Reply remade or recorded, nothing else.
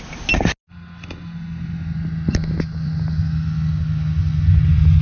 recorded